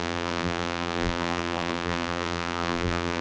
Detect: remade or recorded remade